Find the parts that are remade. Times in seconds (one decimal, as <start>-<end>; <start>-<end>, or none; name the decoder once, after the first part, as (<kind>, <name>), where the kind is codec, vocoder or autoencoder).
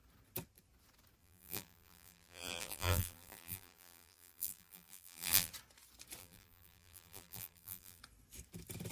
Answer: 1.2-5.5 (vocoder, BigVGAN v2); 6.2-8.0